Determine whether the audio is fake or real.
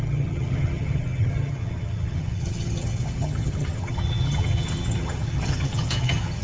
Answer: fake